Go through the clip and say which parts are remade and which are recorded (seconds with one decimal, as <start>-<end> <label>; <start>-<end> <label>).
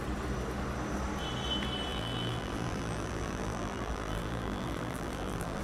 0.0-1.9 recorded; 1.9-5.6 remade